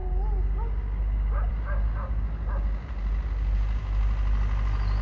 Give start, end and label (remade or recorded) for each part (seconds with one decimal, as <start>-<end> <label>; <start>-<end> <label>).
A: 0.0-5.0 recorded